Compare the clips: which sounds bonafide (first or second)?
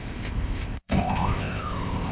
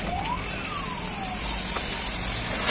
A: second